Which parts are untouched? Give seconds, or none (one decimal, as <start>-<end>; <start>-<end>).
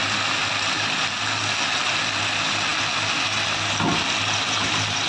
0.0-5.1